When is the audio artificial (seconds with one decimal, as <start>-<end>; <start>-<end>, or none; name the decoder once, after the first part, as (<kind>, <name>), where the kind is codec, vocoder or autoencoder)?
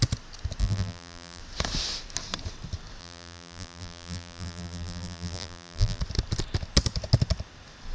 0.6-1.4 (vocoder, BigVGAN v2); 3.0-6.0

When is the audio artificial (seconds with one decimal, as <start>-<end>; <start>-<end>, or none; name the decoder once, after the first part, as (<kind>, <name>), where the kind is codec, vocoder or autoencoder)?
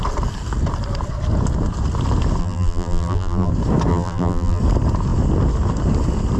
2.4-3.5 (vocoder, BigVGAN v2); 3.9-4.6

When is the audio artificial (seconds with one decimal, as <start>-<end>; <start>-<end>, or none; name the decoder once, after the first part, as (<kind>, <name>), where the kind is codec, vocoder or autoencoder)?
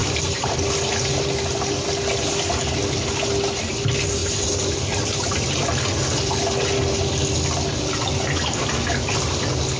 0.0-0.5 (vocoder, BigVGAN v2); 4.2-4.7